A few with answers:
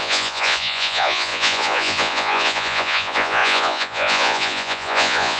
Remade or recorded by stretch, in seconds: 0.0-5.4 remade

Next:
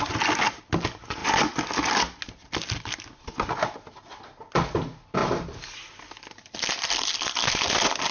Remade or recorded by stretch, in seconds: 0.0-8.1 recorded

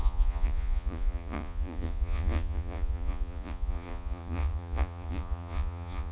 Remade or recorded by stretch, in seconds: 0.0-6.1 remade

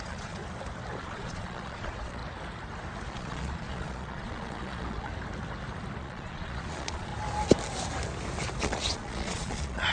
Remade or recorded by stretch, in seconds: 0.0-0.4 remade; 0.4-1.0 recorded; 1.0-2.2 remade; 2.2-3.1 recorded; 3.1-5.1 remade; 5.1-6.0 recorded; 6.0-7.1 remade; 7.1-8.6 recorded; 8.6-9.9 remade

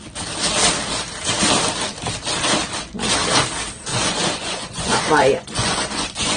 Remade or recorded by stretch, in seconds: 0.0-3.9 recorded; 3.9-6.4 remade

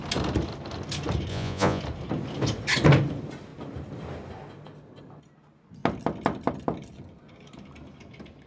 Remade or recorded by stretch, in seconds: 0.0-1.3 recorded; 1.3-1.8 remade; 1.8-8.5 recorded

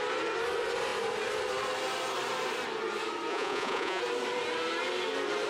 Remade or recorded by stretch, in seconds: 0.0-3.3 recorded; 3.3-4.0 remade; 4.0-5.5 recorded